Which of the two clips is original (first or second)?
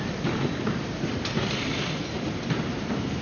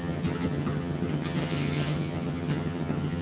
first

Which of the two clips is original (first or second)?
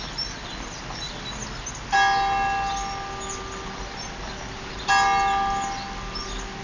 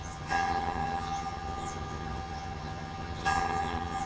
first